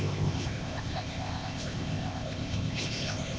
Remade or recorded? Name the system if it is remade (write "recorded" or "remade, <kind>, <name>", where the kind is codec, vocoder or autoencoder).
remade, codec, ZipCodec